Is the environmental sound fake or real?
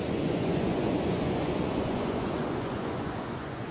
fake